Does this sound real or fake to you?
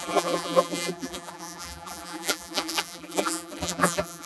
fake